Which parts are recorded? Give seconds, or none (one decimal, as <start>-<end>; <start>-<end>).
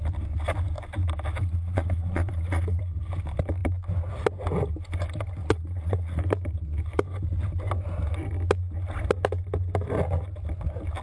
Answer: 0.0-1.4; 2.8-5.4; 6.2-11.0